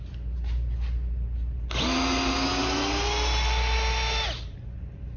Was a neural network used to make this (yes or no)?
no